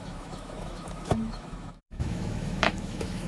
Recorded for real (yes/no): no